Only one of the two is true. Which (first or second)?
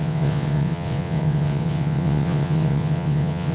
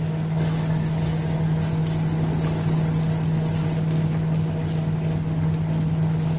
second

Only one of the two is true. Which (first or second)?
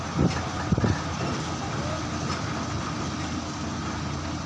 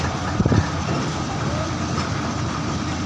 first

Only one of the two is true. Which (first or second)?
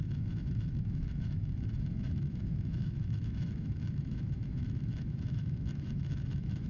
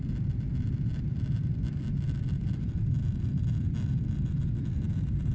second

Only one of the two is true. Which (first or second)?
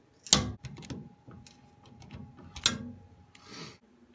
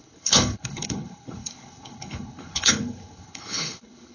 first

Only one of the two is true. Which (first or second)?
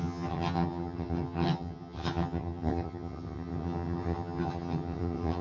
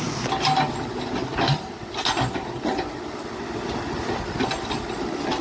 second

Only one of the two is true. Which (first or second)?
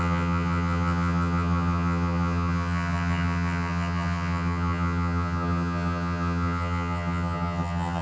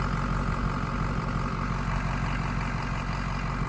second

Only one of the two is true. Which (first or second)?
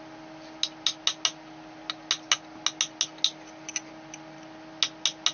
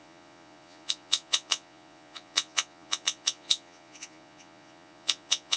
first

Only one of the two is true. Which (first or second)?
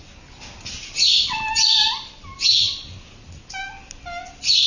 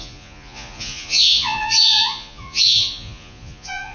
first